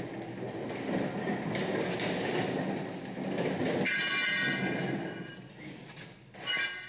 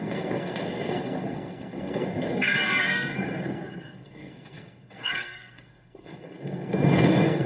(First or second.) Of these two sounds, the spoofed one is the second